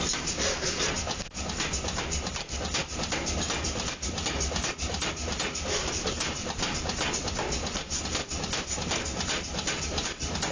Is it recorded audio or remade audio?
recorded